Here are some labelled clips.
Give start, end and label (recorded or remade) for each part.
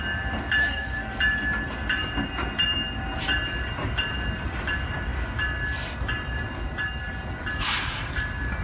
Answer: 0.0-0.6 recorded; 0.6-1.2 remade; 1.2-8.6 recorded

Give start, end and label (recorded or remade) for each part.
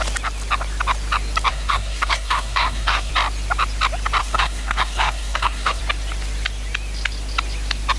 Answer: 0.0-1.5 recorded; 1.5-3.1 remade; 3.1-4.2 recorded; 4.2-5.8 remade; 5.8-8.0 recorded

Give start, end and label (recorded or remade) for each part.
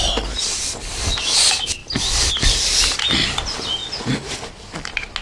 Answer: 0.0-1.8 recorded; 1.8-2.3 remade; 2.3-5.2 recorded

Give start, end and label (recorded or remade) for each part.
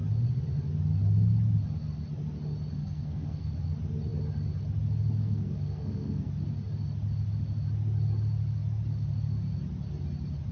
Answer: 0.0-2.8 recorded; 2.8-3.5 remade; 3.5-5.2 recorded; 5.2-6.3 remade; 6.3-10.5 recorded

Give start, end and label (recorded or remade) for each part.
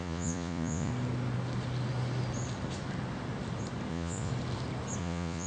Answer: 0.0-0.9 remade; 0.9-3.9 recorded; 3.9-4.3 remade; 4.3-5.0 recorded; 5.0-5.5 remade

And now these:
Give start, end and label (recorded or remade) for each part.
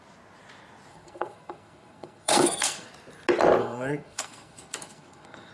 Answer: 0.0-0.9 recorded; 0.9-2.9 remade; 2.9-3.6 recorded; 3.6-5.5 remade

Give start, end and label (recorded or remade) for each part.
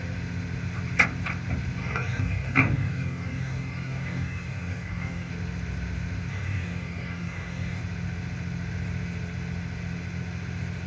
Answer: 0.0-1.8 recorded; 1.8-5.3 remade; 5.3-6.3 recorded; 6.3-7.8 remade; 7.8-10.9 recorded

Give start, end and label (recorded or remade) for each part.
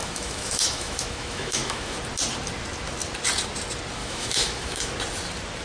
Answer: 0.0-2.0 remade; 2.0-4.0 recorded; 4.0-4.9 remade; 4.9-5.6 recorded